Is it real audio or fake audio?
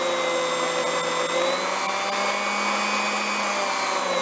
real